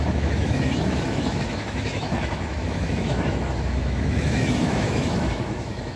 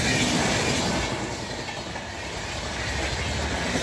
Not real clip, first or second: first